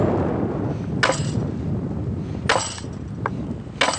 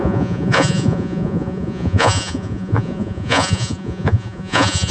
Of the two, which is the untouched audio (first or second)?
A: first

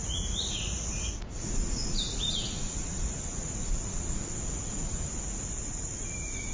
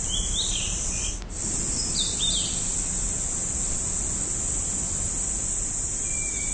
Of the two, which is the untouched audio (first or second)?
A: second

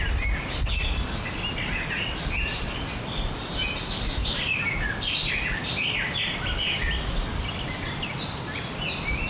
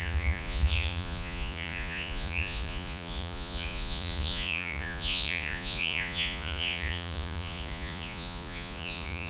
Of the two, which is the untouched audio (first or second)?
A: first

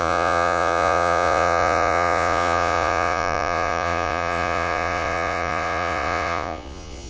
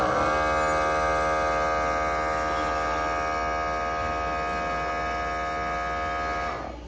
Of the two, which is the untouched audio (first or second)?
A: second